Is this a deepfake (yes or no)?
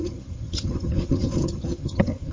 yes